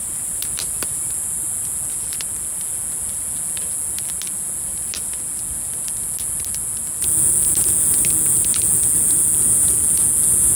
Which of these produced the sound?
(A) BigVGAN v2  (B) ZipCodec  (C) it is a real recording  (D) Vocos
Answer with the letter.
C